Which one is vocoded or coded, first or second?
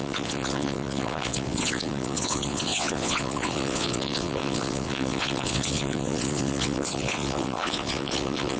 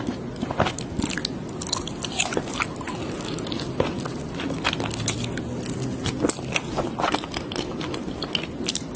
first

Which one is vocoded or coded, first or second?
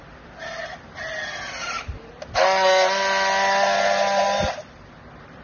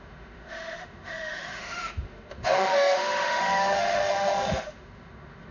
second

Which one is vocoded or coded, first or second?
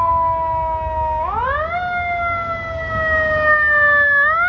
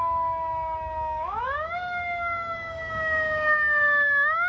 second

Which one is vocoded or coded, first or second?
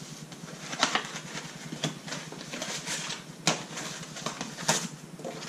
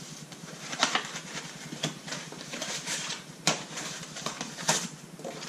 second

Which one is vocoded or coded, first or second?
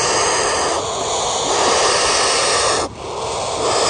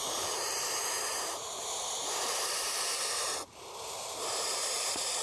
second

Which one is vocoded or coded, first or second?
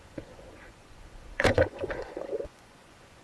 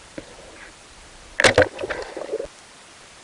first